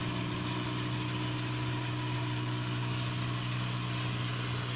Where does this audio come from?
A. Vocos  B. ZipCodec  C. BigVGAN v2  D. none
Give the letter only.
D